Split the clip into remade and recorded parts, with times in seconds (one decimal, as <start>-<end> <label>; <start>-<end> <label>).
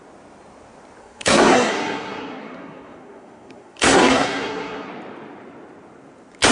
0.0-1.0 recorded; 1.0-4.9 remade; 4.9-6.5 recorded